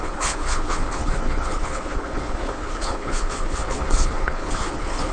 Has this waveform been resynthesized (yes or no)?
yes